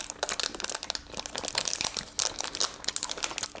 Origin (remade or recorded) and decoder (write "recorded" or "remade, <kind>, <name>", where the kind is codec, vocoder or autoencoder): recorded